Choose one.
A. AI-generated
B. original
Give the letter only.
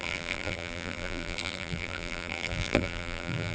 A